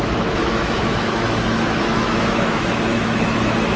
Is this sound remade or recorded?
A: remade